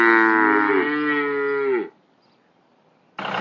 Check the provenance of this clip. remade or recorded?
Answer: recorded